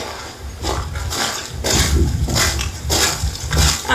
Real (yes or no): yes